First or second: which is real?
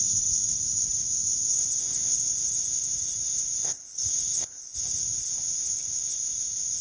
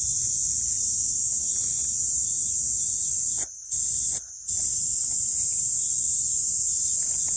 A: second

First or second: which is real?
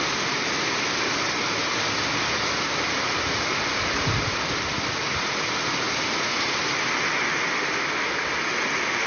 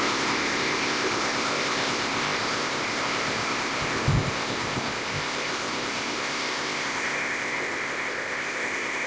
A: first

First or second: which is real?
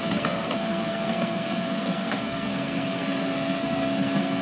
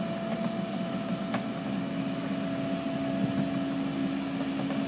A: second